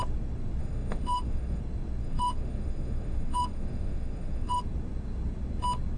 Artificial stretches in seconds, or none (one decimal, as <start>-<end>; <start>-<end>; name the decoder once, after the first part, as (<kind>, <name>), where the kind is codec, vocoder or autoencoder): 0.6-1.6 (autoencoder, DAC-VAE); 2.0-4.6